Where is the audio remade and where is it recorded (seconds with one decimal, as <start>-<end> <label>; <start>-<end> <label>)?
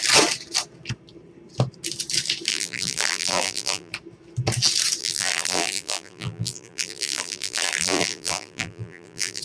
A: 0.0-2.5 recorded; 2.5-3.9 remade; 3.9-5.0 recorded; 5.0-9.4 remade